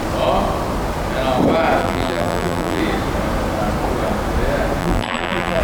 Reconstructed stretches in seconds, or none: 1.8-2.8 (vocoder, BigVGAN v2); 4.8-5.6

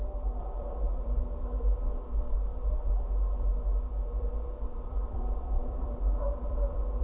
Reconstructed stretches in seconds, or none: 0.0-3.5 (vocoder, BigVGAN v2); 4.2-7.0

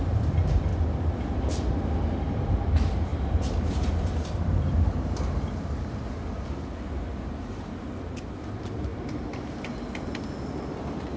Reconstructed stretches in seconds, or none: 0.0-0.7 (vocoder, BigVGAN v2); 1.4-8.9; 10.7-11.2